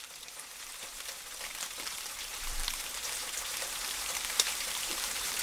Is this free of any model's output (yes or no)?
no